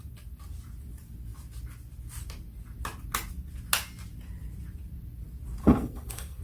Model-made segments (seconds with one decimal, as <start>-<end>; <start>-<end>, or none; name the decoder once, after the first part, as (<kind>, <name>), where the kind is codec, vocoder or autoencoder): 5.6-6.4 (codec, SNAC)